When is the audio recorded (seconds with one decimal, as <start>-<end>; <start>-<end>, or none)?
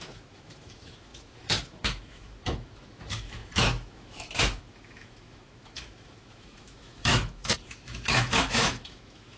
none